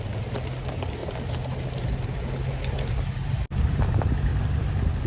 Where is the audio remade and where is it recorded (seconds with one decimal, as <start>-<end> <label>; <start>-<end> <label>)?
0.0-4.3 recorded; 4.3-5.1 remade